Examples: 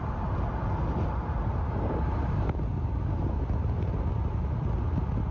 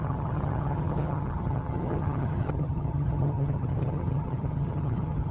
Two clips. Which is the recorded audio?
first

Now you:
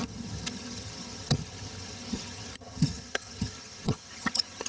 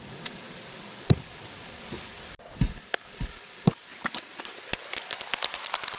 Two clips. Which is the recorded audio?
second